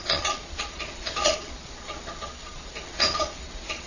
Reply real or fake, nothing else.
fake